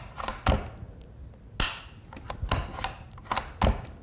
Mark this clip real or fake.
real